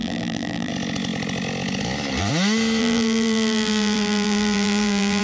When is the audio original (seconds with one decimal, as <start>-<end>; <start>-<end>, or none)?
0.7-2.8